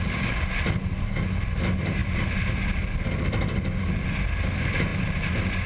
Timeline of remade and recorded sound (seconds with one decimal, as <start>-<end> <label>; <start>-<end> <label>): 0.0-5.7 recorded